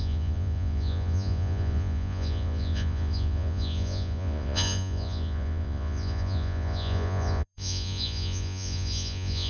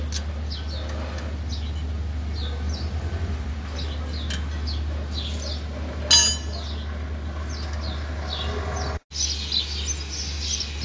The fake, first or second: first